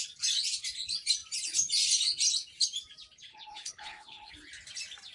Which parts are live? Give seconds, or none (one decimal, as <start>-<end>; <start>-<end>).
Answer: 0.0-3.3; 4.3-5.1